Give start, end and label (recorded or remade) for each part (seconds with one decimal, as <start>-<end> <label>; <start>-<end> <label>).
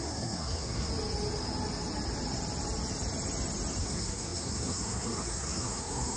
0.0-0.9 remade; 0.9-3.8 recorded; 3.8-6.2 remade